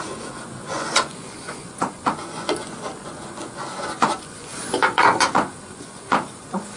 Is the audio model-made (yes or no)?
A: yes